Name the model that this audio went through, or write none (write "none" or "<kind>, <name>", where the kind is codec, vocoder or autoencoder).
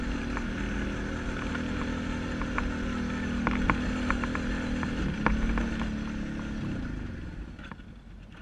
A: none